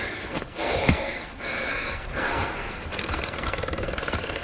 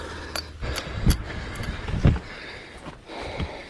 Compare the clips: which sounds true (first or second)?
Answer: second